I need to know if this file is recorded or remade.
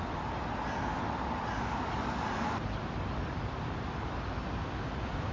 recorded